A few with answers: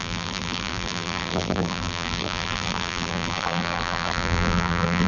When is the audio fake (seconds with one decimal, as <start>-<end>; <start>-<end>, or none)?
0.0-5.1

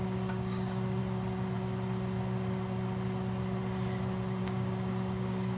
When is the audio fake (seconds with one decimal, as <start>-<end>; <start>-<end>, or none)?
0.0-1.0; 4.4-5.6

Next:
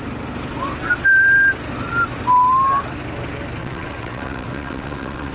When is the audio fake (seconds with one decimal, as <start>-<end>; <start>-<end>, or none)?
3.6-5.3